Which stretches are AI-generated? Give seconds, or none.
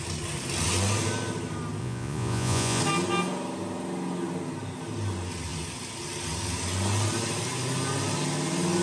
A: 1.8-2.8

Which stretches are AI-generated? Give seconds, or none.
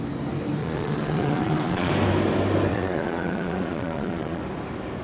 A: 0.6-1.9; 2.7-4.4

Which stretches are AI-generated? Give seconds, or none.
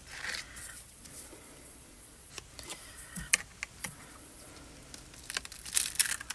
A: 0.6-2.3; 2.7-3.4; 3.8-4.5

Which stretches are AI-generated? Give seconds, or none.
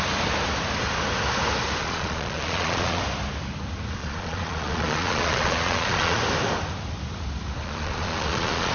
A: 1.8-3.0; 4.0-6.2; 7.6-8.7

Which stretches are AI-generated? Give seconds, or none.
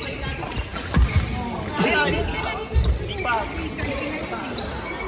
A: none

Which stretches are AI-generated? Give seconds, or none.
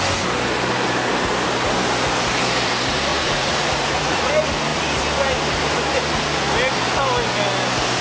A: 3.1-4.3